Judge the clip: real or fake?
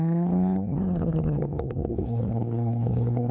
fake